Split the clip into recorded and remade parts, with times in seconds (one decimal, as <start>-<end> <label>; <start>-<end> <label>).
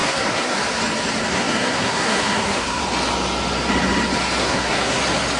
0.0-0.6 remade; 0.6-1.3 recorded; 1.3-2.8 remade; 2.8-4.4 recorded; 4.4-5.0 remade; 5.0-5.4 recorded